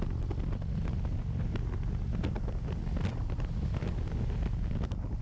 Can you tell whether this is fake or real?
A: real